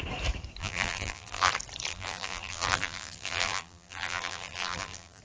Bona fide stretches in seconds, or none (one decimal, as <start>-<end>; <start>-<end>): 0.0-0.6; 1.5-1.9